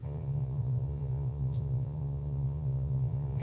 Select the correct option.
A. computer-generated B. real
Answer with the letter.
A